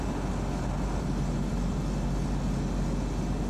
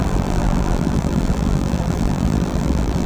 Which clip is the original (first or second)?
first